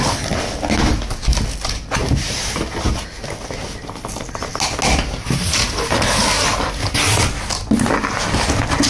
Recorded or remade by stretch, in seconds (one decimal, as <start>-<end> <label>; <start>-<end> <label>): 0.0-8.9 recorded